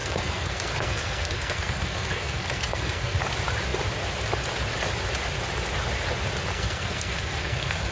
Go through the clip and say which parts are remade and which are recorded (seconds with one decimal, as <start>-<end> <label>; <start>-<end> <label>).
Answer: 0.0-3.2 remade; 3.2-6.5 recorded; 6.5-7.9 remade